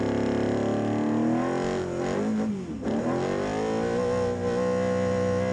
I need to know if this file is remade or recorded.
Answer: recorded